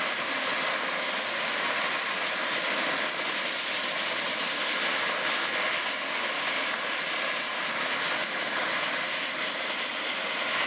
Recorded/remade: recorded